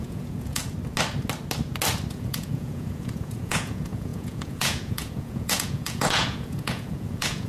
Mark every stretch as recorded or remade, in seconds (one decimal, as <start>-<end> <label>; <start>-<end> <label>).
0.0-0.6 remade; 0.6-2.1 recorded; 2.1-7.5 remade